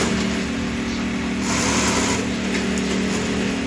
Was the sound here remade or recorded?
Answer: recorded